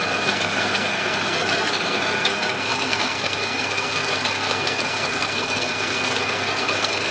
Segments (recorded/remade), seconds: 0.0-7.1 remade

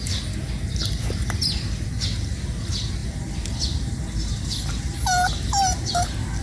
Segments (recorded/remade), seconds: 0.0-6.4 recorded

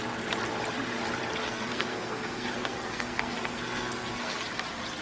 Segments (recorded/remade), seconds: 0.0-1.4 recorded; 1.4-4.4 remade; 4.4-5.0 recorded

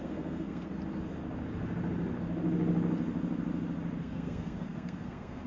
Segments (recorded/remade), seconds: 0.0-0.7 remade; 0.7-4.0 recorded; 4.0-5.5 remade

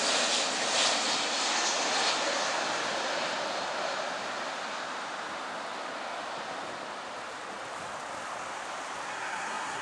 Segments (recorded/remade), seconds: 0.0-9.1 recorded; 9.1-9.8 remade

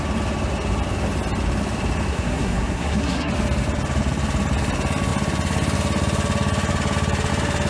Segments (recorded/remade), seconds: 0.0-2.1 recorded; 2.1-3.3 remade; 3.3-7.7 recorded

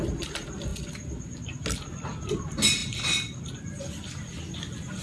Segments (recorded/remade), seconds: 0.0-5.0 recorded